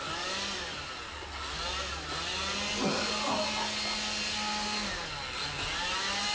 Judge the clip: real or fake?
real